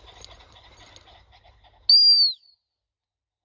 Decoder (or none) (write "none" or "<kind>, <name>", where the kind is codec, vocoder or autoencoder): none